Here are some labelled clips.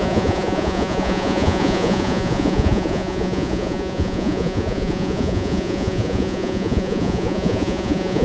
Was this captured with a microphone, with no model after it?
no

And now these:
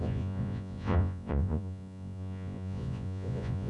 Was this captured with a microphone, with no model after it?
no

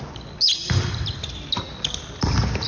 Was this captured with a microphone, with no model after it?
yes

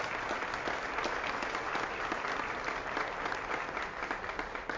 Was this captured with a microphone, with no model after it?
yes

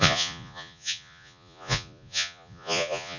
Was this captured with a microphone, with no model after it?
no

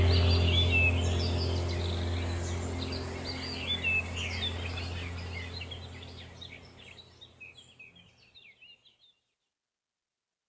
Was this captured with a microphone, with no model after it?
yes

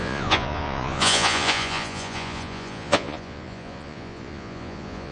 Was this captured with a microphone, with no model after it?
no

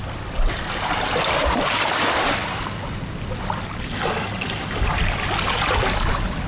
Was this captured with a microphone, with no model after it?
yes